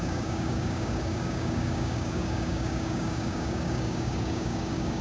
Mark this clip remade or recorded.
remade